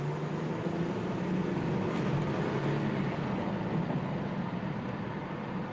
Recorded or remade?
recorded